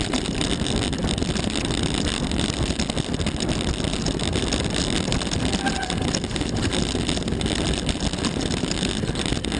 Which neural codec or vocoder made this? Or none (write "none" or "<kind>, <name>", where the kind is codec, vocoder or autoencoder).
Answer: none